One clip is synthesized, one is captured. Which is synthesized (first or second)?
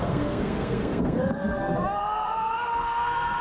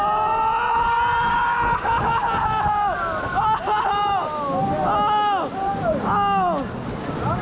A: first